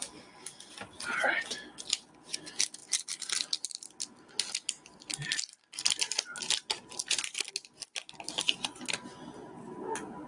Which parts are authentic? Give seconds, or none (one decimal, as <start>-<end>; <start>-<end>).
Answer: 0.0-10.3